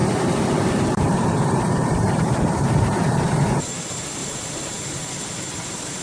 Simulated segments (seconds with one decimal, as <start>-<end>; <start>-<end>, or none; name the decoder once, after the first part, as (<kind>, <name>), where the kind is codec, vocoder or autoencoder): 0.0-3.6 (vocoder, BigVGAN v2); 4.2-5.1